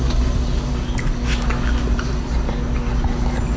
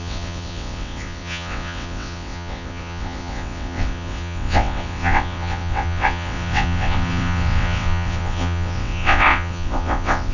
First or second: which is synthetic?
second